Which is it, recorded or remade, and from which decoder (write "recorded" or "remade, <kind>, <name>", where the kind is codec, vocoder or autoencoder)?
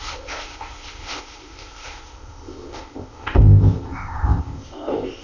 remade, codec, ZipCodec